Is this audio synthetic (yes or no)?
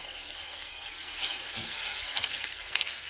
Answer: yes